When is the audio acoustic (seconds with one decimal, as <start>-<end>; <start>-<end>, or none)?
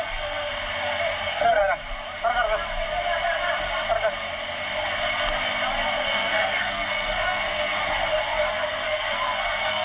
0.5-1.2; 1.6-6.0; 7.8-8.5